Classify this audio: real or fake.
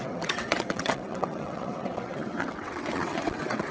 fake